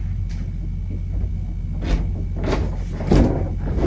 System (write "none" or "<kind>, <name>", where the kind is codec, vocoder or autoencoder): none